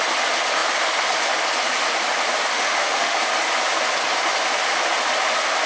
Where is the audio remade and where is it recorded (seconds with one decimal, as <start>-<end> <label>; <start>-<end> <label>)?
0.0-2.5 recorded; 2.5-3.2 remade; 3.2-5.7 recorded